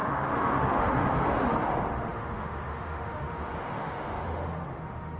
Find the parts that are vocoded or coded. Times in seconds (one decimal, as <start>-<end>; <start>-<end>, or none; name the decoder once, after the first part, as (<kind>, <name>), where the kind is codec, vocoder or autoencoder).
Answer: 0.0-5.2 (autoencoder, DAC-VAE)